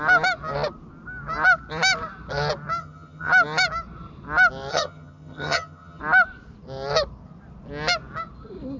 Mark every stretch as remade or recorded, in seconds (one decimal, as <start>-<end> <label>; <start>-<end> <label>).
0.0-2.8 recorded; 2.8-3.3 remade; 3.3-4.7 recorded; 4.7-6.0 remade; 6.0-8.8 recorded

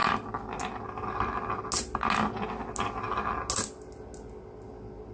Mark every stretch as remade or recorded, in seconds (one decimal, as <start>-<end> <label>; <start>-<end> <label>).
0.0-5.1 recorded

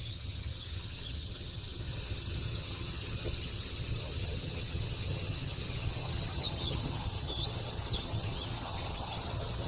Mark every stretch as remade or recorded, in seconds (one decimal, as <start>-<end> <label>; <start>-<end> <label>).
0.0-9.7 remade

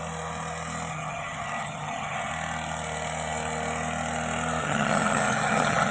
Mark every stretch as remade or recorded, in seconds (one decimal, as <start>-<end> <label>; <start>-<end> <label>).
0.0-0.9 recorded; 0.9-2.3 remade; 2.3-4.6 recorded; 4.6-5.9 remade

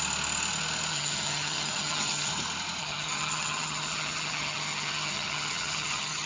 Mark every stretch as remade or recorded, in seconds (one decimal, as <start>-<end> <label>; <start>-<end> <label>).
0.0-0.9 recorded; 0.9-2.3 remade; 2.3-2.8 recorded; 2.8-6.3 remade